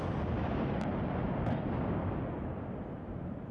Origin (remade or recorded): recorded